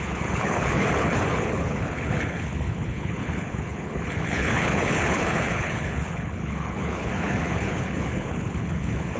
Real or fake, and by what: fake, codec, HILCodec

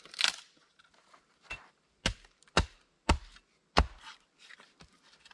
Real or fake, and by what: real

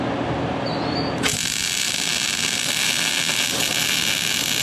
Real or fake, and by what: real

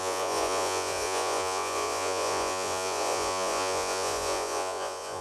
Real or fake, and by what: fake, vocoder, Vocos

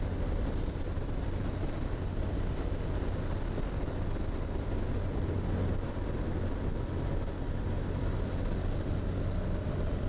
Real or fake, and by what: real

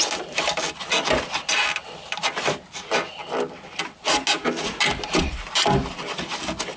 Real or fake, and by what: real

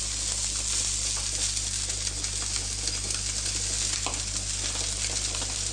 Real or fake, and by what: real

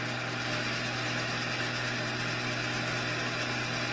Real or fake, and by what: real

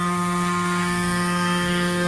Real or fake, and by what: fake, codec, SNAC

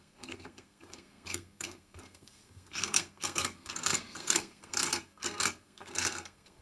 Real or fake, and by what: fake, codec, SNAC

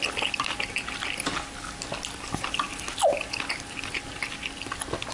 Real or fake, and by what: real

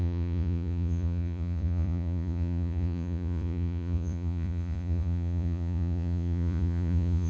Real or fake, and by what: fake, vocoder, Vocos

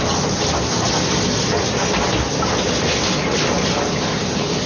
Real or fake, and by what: real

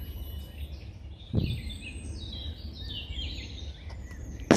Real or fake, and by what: real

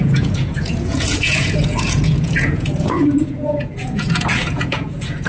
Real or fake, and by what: fake, vocoder, Vocos